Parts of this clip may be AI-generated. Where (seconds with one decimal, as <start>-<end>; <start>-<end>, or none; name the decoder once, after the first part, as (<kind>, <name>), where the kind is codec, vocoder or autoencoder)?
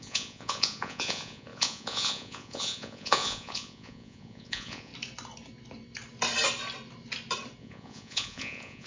0.0-4.9 (vocoder, Vocos); 7.6-8.9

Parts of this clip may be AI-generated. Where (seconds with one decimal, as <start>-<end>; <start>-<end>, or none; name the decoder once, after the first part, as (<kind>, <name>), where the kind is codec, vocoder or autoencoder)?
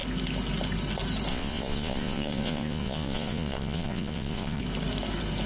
1.3-4.6 (vocoder, Vocos)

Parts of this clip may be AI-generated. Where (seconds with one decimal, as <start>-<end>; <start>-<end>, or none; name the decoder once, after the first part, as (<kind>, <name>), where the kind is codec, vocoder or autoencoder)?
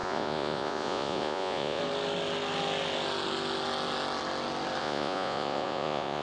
0.0-1.8 (vocoder, Vocos); 4.8-6.2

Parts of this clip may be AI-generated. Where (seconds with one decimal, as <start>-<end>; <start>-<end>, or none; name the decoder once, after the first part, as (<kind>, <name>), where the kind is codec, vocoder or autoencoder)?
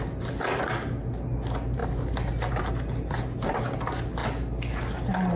none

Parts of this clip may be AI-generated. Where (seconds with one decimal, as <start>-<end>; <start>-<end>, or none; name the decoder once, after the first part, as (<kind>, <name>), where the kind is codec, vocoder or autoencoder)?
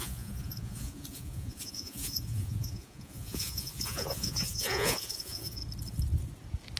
0.0-5.6 (vocoder, Vocos)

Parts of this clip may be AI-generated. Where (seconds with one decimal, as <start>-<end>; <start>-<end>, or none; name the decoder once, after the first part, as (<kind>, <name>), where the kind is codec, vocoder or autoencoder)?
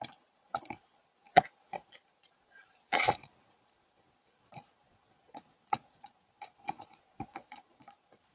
0.0-8.3 (vocoder, Vocos)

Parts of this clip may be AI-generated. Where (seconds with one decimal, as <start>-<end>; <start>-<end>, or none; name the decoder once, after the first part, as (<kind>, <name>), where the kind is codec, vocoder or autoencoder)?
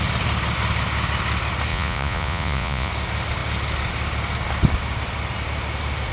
1.7-2.9 (vocoder, Vocos)